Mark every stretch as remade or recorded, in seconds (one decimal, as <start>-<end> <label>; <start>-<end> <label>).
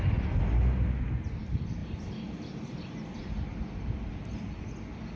0.0-5.2 recorded